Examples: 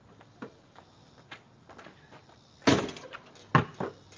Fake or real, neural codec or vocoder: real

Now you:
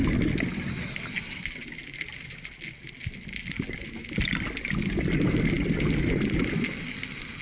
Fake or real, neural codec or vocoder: real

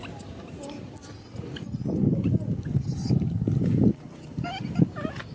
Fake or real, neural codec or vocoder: real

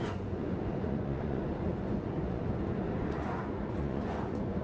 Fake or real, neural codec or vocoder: fake, vocoder, Vocos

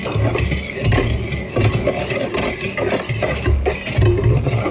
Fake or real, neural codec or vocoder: real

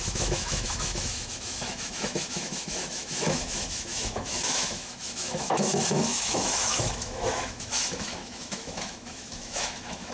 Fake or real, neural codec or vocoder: fake, autoencoder, DAC-VAE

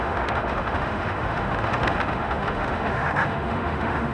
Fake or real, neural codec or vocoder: fake, autoencoder, DAC-VAE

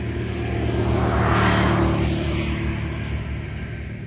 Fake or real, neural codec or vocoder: real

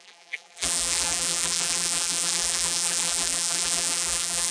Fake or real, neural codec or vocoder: fake, vocoder, BigVGAN v2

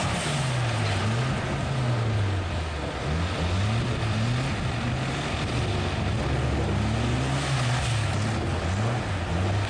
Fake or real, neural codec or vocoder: real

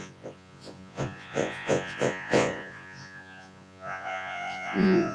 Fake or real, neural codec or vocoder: fake, vocoder, Vocos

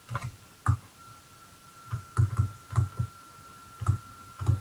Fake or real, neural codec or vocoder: real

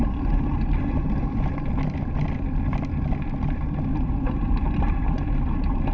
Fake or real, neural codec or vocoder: real